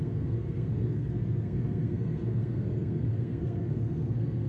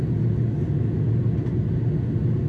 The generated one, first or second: first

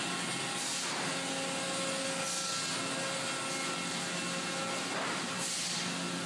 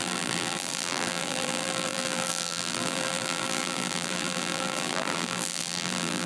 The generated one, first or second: second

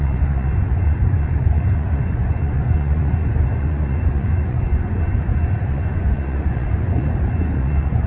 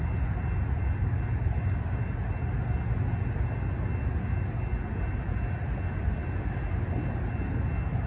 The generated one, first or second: first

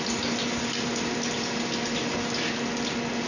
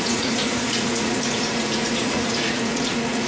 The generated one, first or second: second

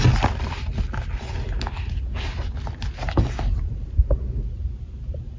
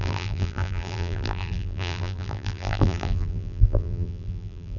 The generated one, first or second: second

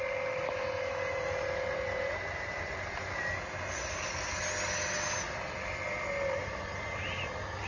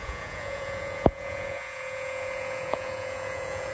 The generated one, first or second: second